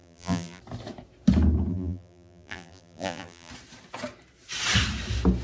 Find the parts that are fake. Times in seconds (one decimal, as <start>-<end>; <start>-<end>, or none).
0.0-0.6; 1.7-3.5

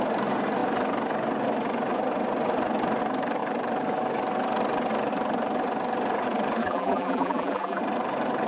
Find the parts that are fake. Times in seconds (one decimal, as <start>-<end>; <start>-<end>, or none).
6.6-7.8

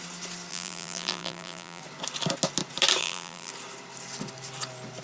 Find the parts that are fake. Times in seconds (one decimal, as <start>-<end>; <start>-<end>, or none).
0.5-1.8; 3.0-3.5

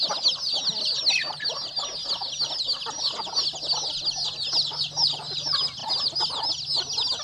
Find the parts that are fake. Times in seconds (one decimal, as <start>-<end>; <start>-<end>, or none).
none

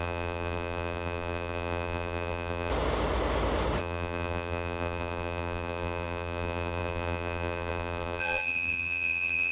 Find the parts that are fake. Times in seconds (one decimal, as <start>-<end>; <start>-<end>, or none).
0.0-2.7; 3.8-9.5

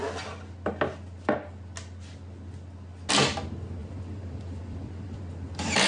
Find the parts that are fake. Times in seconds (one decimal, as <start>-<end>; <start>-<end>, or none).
3.8-5.2